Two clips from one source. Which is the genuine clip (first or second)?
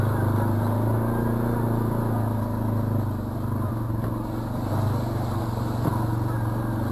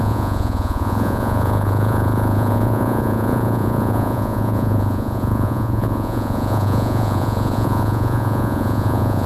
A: first